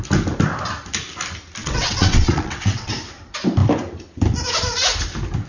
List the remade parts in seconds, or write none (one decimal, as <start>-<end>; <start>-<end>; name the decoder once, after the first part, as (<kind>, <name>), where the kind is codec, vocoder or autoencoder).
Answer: 1.6-2.9 (vocoder, WaveNeXt)